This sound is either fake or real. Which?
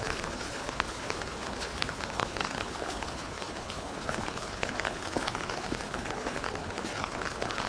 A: fake